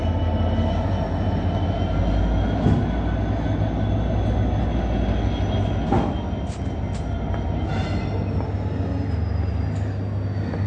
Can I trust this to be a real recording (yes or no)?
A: yes